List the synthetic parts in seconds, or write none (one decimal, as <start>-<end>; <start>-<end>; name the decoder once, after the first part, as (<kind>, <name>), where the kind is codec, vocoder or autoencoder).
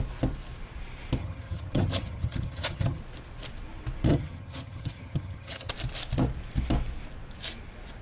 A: 1.2-3.0 (vocoder, HiFi-GAN); 4.1-5.7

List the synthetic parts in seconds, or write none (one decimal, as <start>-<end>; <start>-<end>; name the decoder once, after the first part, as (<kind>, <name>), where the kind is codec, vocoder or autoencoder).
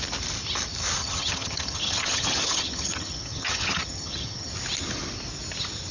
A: 1.0-4.5 (vocoder, HiFi-GAN)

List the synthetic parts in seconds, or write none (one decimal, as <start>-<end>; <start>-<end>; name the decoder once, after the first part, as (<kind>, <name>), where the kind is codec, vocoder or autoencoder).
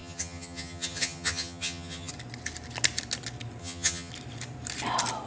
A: 0.0-2.1 (vocoder, HiFi-GAN); 3.6-4.1